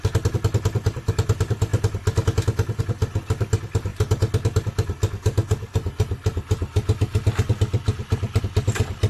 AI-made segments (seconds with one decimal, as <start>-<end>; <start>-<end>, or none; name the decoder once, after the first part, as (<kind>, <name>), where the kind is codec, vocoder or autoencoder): none